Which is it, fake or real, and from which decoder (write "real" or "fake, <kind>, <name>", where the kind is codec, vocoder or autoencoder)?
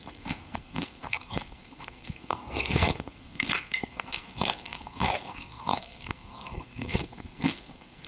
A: fake, codec, SNAC